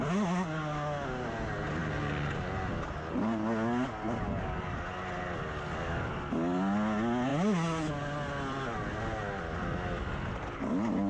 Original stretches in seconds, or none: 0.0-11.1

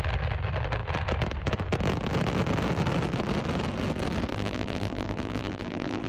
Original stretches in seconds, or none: 0.0-4.3